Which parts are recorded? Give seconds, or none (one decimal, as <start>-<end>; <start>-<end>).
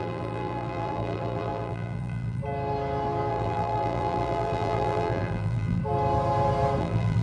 2.4-3.3; 5.8-6.8